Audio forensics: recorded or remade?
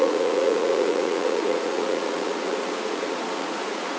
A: remade